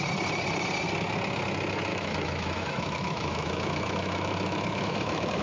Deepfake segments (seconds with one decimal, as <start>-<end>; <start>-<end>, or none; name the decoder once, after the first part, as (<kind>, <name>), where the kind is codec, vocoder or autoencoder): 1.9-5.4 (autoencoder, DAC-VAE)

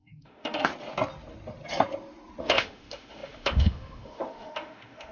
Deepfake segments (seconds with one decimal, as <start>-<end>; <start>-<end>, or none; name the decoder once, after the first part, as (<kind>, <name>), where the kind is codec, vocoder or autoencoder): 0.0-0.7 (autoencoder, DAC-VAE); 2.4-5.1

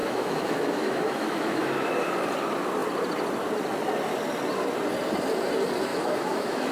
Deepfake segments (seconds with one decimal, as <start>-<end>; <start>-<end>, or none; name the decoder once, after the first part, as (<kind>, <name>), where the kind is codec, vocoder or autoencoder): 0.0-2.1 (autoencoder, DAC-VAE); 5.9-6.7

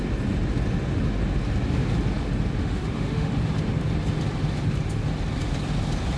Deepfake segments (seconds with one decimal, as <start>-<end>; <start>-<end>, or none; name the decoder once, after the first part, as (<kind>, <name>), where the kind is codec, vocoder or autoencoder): 2.6-3.3 (autoencoder, DAC-VAE)